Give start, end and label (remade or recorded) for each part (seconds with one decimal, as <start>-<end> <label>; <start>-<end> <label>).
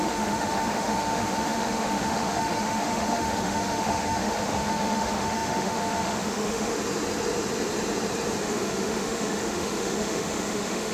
0.0-6.7 remade; 6.7-8.4 recorded; 8.4-10.9 remade